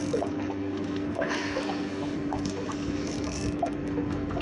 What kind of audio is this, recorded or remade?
remade